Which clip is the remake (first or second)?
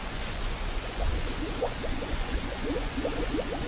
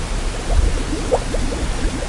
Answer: first